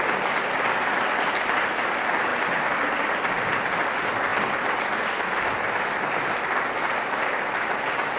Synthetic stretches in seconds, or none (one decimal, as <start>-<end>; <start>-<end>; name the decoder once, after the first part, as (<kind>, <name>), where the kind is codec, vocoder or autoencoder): none